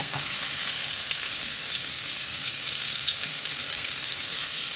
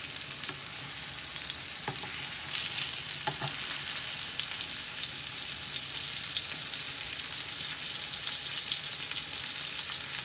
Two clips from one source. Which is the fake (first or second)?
first